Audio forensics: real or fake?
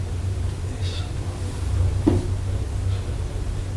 real